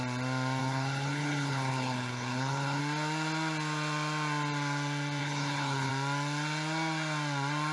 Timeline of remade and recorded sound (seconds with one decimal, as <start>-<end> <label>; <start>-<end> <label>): 0.0-0.6 recorded; 0.6-2.8 remade; 2.8-5.2 recorded; 5.2-5.9 remade; 5.9-7.7 recorded